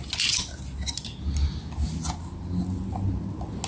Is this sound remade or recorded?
recorded